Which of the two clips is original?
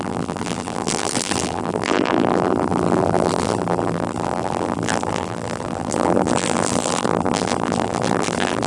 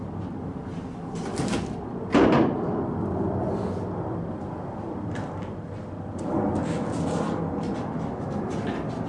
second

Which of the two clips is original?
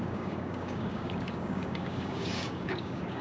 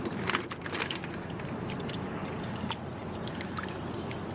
second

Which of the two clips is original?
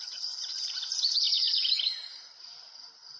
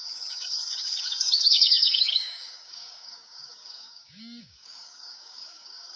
first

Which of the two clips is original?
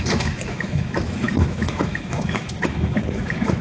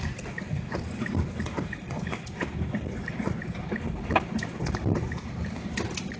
second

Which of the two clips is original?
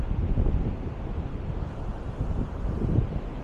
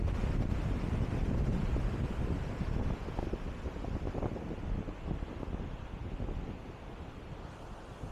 second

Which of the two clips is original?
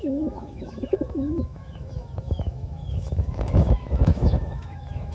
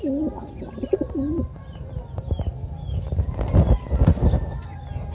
second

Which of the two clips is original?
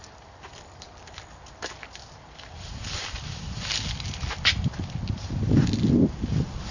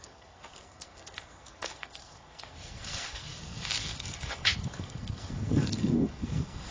first